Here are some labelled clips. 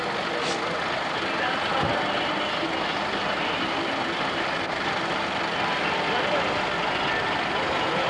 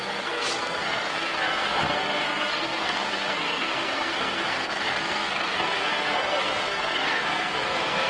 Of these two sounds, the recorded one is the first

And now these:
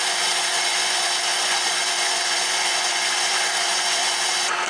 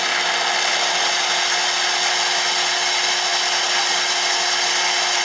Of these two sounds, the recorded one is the second